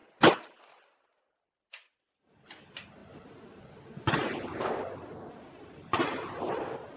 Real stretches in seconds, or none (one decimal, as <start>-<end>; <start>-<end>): 0.0-7.0